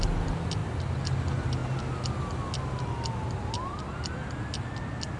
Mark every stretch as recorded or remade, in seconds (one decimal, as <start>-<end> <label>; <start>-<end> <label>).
0.0-5.2 recorded